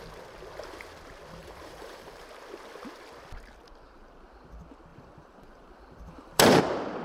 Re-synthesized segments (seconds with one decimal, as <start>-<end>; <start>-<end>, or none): 1.4-2.2; 4.9-6.6